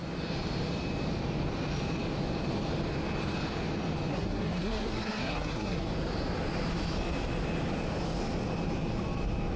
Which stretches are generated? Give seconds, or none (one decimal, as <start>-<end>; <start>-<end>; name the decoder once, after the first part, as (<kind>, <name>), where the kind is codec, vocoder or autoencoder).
4.1-5.9 (codec, SNAC)